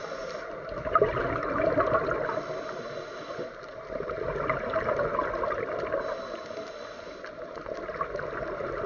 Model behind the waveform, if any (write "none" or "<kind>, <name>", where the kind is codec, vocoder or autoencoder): none